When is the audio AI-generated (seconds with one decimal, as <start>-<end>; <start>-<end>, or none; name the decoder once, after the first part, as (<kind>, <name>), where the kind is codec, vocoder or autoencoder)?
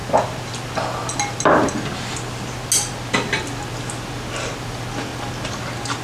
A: none